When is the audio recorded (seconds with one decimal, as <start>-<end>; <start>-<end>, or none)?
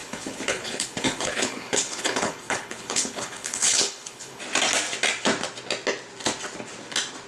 4.4-7.3